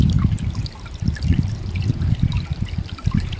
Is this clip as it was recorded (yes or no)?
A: no